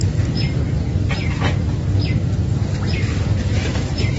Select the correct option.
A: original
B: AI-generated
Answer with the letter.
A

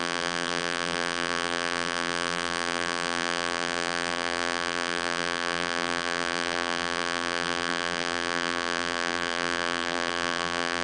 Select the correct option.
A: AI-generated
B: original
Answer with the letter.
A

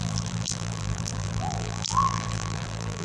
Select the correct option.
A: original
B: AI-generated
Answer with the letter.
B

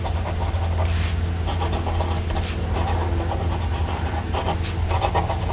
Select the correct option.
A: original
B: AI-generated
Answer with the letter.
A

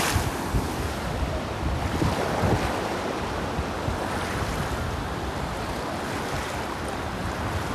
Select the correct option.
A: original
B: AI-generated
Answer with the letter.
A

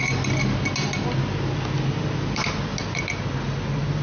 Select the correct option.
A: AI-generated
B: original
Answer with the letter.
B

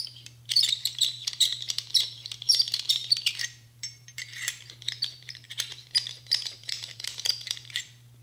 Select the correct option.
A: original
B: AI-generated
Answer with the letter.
B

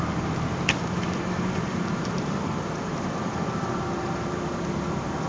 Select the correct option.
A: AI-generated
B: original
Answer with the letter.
A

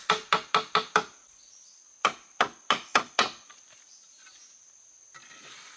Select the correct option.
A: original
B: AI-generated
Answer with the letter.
A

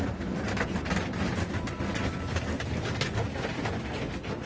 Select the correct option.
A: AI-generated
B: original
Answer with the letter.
B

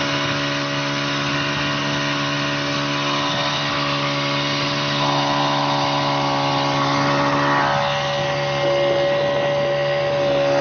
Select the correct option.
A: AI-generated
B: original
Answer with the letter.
B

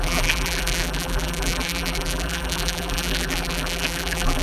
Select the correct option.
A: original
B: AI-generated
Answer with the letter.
B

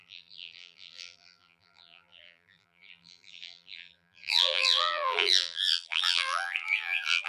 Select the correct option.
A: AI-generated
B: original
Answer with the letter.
A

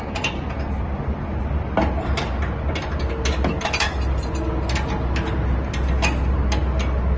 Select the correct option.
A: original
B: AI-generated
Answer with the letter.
A